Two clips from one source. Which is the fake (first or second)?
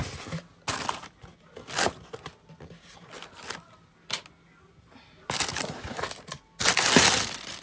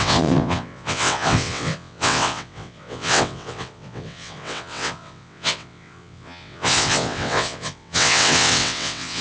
second